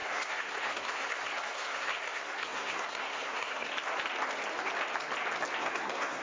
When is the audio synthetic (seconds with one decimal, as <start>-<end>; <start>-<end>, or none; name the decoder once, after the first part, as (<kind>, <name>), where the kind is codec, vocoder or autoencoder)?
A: 0.0-3.7 (codec, SNAC); 5.6-6.2